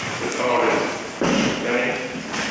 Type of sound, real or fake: real